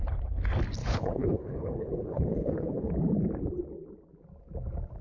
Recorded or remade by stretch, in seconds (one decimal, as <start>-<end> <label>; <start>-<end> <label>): 0.0-0.8 recorded; 0.8-2.9 remade; 2.9-5.0 recorded